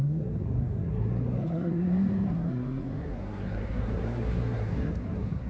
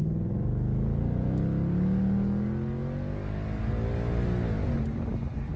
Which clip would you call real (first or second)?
second